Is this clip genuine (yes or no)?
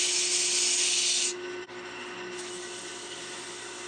yes